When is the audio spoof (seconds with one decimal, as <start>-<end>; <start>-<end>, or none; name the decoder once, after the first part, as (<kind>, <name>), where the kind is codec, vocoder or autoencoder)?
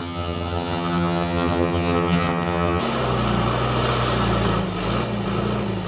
0.0-2.8 (vocoder, HiFi-GAN)